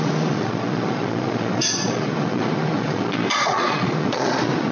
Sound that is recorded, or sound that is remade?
remade